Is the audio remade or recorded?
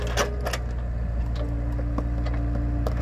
recorded